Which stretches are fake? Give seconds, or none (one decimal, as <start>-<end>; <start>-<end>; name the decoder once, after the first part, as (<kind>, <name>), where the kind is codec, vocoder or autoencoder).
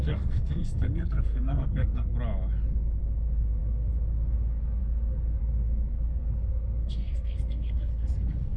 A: 0.0-2.1 (codec, SNAC); 3.0-5.4; 5.9-8.6